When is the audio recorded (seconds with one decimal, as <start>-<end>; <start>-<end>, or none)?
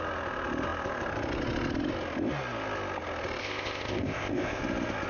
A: 0.0-3.4; 4.6-5.1